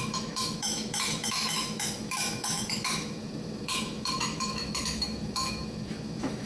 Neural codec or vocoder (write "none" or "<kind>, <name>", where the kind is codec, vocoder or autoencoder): autoencoder, DAC-VAE